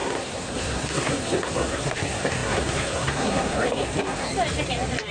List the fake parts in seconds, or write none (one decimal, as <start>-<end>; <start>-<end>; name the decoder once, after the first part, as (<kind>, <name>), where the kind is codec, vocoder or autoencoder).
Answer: 0.0-4.3 (codec, SNAC)